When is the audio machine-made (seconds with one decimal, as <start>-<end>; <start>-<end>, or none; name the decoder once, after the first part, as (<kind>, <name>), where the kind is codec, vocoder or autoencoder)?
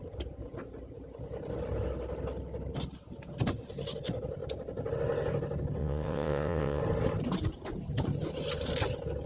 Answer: 5.8-6.8 (vocoder, WaveNeXt)